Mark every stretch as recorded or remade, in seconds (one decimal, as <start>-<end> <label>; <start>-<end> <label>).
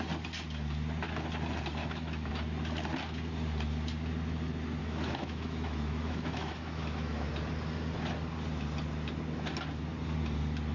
0.0-1.8 recorded; 1.8-2.3 remade; 2.3-4.8 recorded; 4.8-7.3 remade; 7.3-10.7 recorded